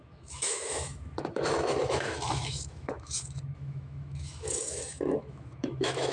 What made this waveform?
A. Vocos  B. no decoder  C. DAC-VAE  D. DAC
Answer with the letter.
C